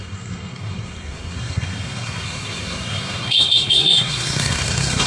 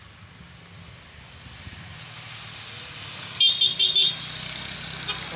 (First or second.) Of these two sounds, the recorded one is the second